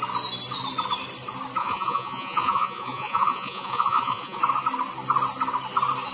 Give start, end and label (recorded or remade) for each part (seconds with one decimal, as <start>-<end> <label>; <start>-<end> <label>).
0.0-1.6 recorded; 1.6-4.4 remade; 4.4-6.1 recorded